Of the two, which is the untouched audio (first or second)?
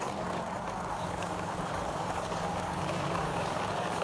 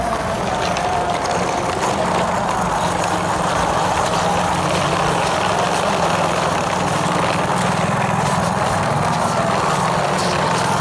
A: second